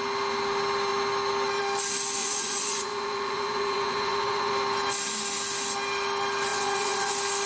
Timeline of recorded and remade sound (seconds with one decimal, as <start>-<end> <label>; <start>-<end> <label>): 0.0-2.2 recorded; 2.2-4.5 remade; 4.5-6.5 recorded; 6.5-7.1 remade; 7.1-7.5 recorded